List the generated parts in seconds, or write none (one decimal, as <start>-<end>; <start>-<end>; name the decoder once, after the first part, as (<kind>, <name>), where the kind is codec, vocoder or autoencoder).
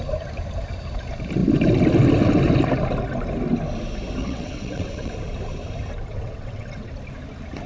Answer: 4.2-5.1 (vocoder, WaveNeXt); 6.1-6.9